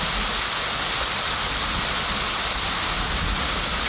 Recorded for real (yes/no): yes